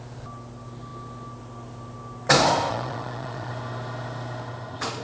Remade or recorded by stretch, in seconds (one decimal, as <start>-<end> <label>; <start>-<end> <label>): 0.0-2.7 recorded; 2.7-3.5 remade; 3.5-5.0 recorded